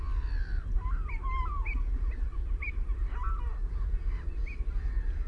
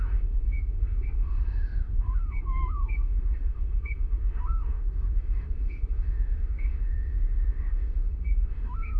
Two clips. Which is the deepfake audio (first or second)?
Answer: second